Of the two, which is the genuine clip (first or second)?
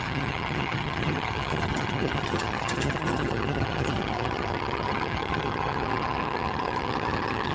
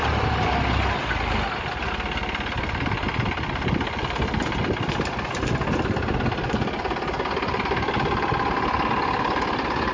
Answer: second